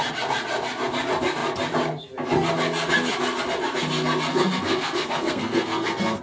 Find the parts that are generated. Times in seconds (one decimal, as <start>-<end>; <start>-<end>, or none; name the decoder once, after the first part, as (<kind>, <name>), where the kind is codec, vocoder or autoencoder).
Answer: 4.3-6.2 (codec, SNAC)